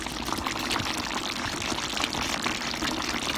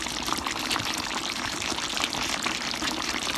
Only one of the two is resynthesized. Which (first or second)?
second